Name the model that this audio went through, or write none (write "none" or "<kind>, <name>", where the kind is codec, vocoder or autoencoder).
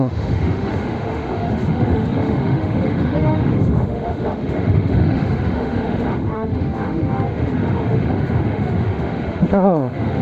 autoencoder, DAC-VAE